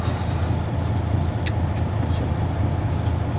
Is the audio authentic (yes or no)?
yes